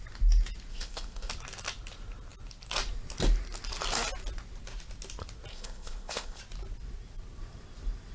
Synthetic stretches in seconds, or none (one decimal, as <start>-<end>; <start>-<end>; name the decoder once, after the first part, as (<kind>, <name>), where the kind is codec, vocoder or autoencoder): 0.7-1.3 (codec, ZipCodec); 5.5-6.4